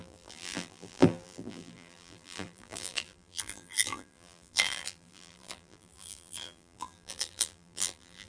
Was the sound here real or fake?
fake